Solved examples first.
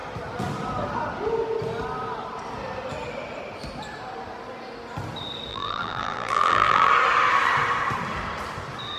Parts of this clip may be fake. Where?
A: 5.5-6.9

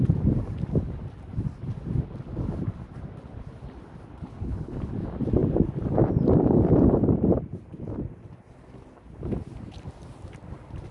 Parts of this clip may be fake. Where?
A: 4.3-4.9

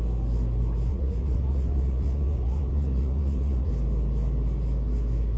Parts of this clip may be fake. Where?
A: 0.9-3.7

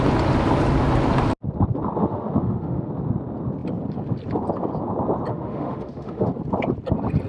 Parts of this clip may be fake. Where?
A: 2.0-2.9; 5.3-6.3